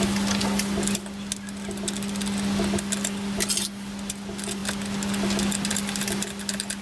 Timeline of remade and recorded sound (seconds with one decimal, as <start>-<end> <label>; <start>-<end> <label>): 0.0-6.8 recorded